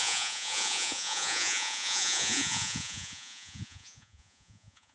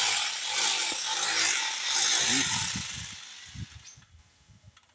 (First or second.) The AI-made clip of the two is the first